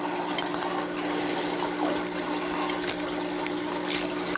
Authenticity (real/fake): real